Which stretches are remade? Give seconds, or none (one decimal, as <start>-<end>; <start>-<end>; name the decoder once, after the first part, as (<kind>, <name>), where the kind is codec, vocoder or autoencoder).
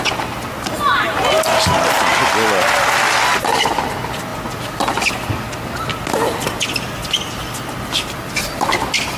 none